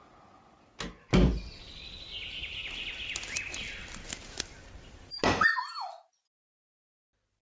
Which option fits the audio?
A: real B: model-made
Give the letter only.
A